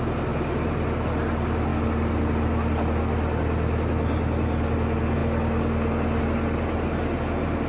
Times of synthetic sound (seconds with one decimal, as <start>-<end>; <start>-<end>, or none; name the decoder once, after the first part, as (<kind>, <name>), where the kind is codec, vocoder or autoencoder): none